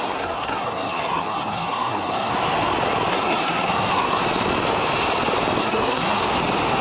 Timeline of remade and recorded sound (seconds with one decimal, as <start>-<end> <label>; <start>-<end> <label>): 0.0-2.3 remade; 2.3-3.1 recorded; 3.1-4.2 remade; 4.2-5.6 recorded; 5.6-6.2 remade; 6.2-6.8 recorded